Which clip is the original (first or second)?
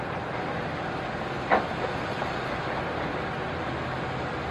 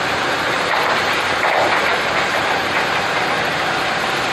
first